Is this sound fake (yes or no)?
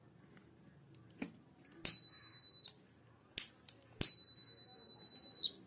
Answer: no